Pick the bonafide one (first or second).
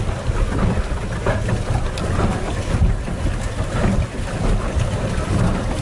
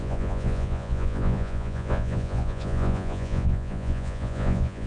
first